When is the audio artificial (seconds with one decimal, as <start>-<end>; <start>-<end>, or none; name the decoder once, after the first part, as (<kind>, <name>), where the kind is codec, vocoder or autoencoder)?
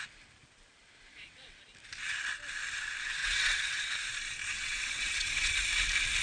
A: 1.1-1.6 (vocoder, WaveNeXt); 3.2-3.9; 4.5-5.6